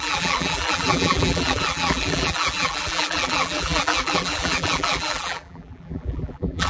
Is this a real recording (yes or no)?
no